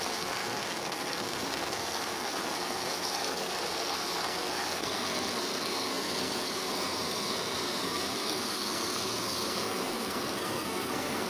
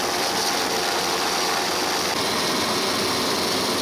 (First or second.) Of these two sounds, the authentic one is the second